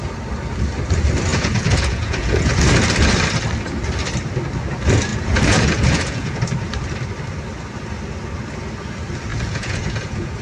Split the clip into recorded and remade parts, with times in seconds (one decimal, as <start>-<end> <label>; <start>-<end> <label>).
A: 0.0-1.3 recorded; 1.3-2.6 remade; 2.6-5.1 recorded; 5.1-6.4 remade; 6.4-9.3 recorded; 9.3-10.4 remade